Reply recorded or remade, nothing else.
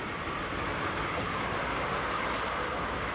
recorded